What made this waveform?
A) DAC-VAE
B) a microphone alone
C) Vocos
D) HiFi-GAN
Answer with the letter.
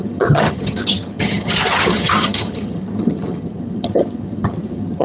D